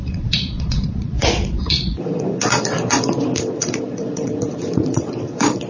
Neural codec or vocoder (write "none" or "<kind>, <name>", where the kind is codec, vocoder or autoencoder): vocoder, Vocos